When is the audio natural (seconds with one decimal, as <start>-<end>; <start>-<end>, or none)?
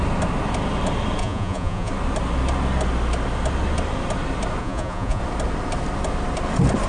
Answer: 0.0-1.2; 1.9-4.6; 5.2-6.9